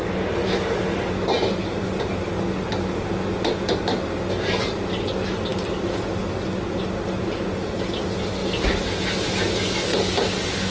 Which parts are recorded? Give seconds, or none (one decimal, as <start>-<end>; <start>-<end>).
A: 0.0-10.7